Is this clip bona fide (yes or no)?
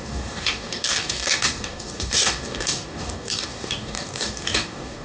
no